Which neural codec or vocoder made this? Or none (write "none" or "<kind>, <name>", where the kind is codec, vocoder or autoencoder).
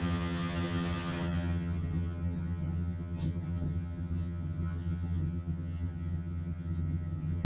vocoder, HiFi-GAN